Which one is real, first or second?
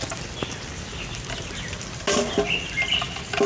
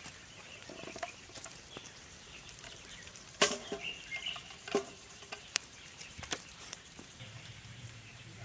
first